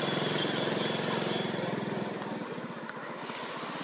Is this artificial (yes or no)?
no